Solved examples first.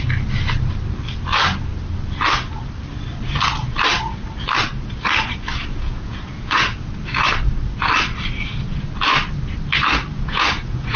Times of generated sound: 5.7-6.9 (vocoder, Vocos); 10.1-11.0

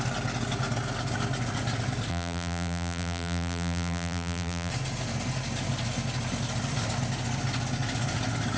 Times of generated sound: 2.1-4.7 (vocoder, BigVGAN v2)

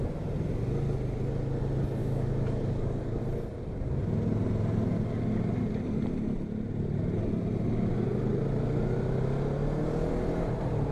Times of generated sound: 2.0-3.2 (codec, DAC)

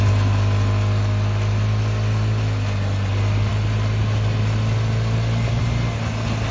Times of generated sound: none

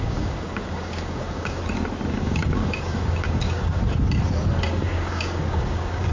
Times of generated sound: 0.0-1.6 (codec, DAC); 2.1-3.8; 4.7-6.1

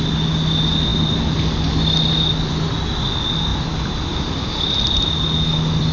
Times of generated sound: none

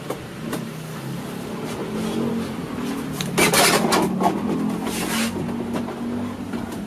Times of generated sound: none

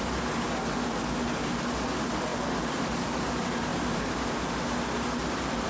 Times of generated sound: none